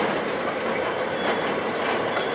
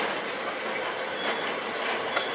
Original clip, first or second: second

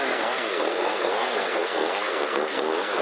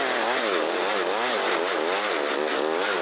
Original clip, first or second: second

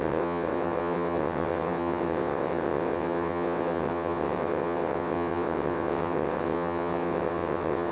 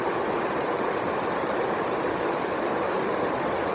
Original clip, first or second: second